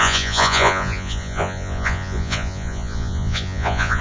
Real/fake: fake